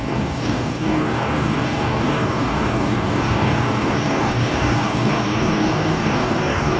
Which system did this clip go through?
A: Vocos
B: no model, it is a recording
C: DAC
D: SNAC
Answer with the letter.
C